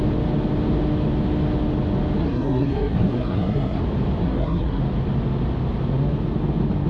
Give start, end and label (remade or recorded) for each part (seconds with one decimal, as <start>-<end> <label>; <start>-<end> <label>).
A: 0.0-2.2 recorded; 2.2-3.8 remade; 3.8-4.2 recorded; 4.2-4.8 remade; 4.8-6.9 recorded